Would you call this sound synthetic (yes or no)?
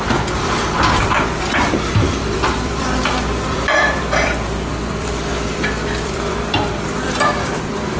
yes